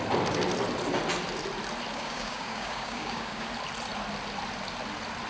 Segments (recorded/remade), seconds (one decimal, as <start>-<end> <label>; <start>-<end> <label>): 0.0-1.9 recorded; 1.9-3.5 remade; 3.5-5.3 recorded